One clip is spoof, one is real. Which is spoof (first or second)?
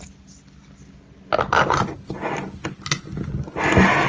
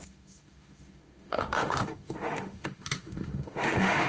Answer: second